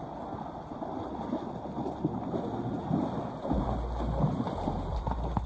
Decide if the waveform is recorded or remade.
recorded